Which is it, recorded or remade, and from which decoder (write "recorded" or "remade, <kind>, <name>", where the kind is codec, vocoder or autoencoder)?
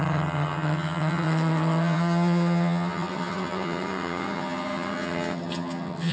remade, vocoder, HiFi-GAN